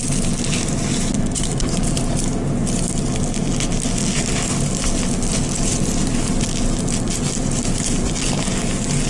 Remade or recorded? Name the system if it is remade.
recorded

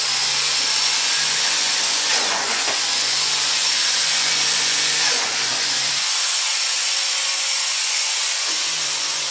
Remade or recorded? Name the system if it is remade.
remade, vocoder, Vocos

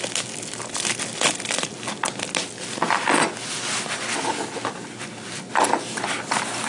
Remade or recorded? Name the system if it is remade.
recorded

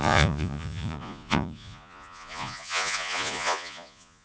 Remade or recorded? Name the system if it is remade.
remade, vocoder, Vocos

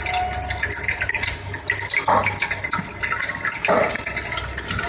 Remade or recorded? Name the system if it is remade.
recorded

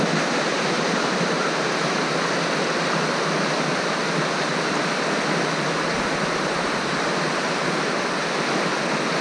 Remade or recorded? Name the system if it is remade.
recorded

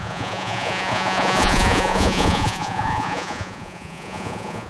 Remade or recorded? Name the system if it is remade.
remade, vocoder, Vocos